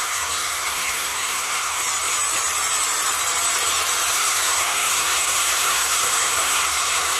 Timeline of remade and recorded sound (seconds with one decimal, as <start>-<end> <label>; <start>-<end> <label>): 0.0-1.8 remade; 1.8-4.1 recorded; 4.1-7.2 remade